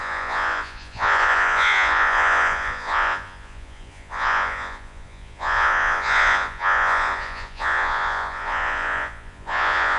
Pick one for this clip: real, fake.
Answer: fake